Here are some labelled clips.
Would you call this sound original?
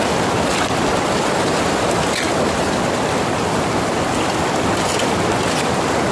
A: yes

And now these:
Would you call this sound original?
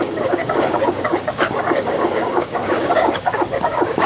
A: no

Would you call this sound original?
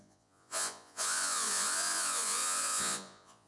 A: no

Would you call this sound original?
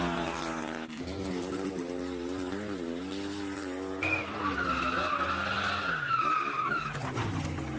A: yes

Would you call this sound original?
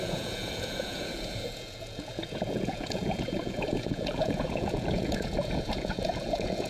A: no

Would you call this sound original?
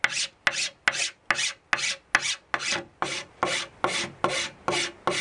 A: yes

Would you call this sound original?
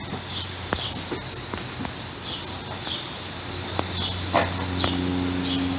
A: no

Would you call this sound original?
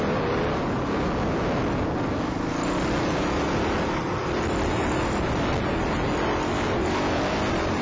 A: yes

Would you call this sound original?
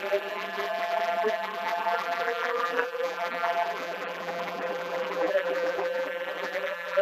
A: no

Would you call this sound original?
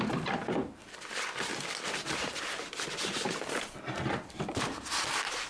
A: no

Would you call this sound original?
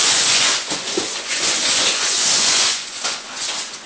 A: no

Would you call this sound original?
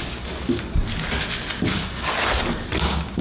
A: yes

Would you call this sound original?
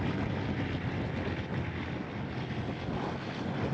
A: yes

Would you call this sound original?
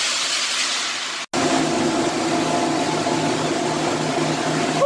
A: yes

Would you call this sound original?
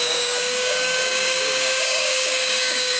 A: no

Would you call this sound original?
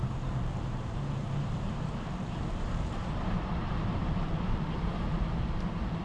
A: no